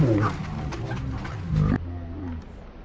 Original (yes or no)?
yes